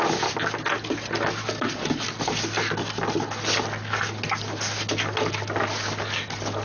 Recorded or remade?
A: recorded